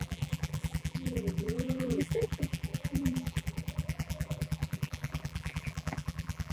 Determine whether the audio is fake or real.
fake